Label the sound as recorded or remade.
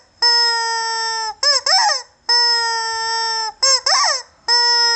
recorded